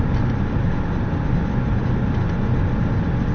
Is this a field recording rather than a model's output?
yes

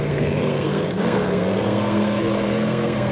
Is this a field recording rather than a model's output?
no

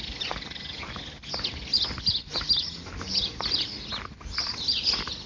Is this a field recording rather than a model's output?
yes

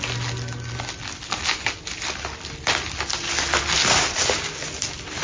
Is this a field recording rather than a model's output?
yes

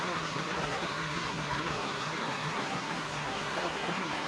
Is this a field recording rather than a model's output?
no